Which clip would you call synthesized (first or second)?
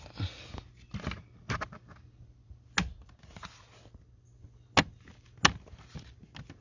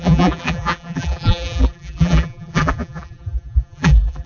second